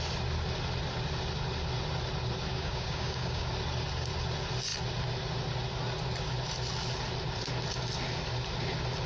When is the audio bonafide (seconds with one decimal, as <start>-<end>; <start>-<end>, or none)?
0.0-2.5; 3.5-9.1